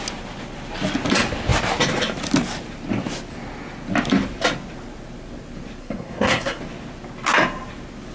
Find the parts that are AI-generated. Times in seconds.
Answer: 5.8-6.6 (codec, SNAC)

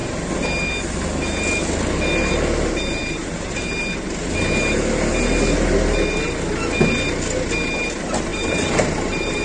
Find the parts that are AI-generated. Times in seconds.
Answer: 3.0-3.8 (vocoder, BigVGAN v2); 8.3-9.4

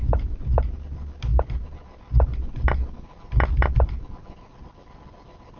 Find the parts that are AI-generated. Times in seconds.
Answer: none

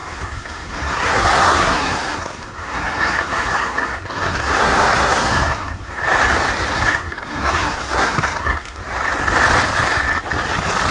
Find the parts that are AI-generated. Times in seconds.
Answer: 0.0-6.0 (codec, SNAC); 6.7-8.8

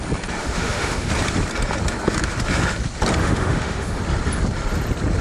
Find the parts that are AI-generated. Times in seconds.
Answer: 0.4-1.1 (autoencoder, DAC-VAE); 3.2-4.0

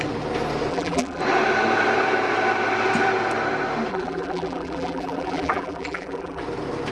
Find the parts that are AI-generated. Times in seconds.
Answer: 0.7-1.2 (vocoder, BigVGAN v2); 3.9-6.4

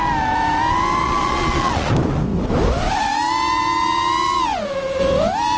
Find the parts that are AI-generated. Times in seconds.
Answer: 1.0-1.9 (vocoder, Vocos)